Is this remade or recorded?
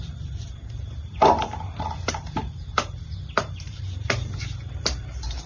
remade